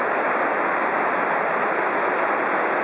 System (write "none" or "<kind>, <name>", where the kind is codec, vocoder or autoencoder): none